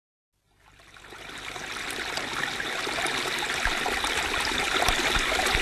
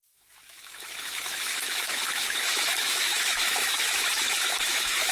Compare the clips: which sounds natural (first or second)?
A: first